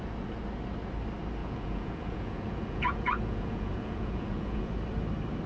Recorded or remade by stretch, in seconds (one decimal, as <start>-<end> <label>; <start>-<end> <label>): 0.0-1.4 recorded; 1.4-4.7 remade; 4.7-5.5 recorded